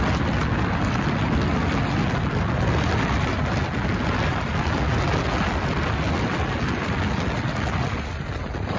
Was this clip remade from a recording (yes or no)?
no